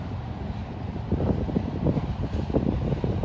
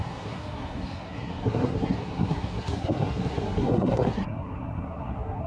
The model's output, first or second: second